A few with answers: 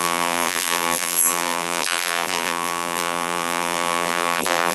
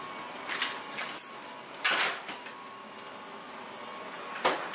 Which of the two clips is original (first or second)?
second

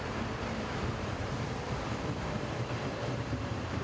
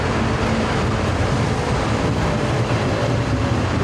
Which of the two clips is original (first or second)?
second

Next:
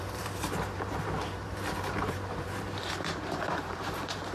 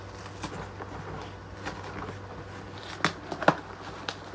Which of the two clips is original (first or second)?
second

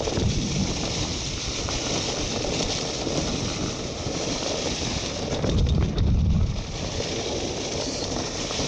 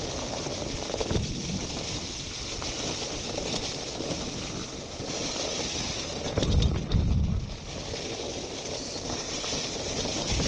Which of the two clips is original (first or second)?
second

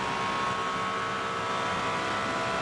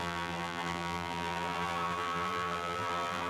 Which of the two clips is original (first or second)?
first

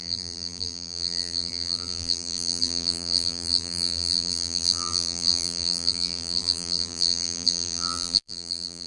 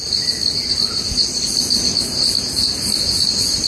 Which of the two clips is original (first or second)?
second